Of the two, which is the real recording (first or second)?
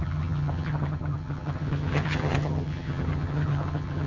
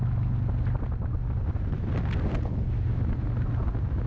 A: second